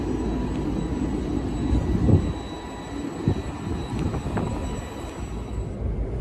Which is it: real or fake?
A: real